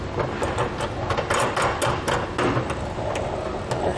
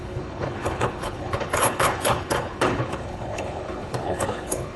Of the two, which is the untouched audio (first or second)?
first